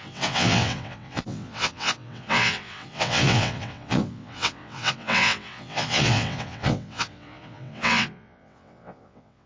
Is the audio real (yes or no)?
no